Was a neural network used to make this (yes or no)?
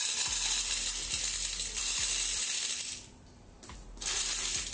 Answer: yes